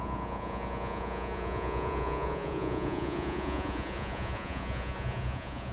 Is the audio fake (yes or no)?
yes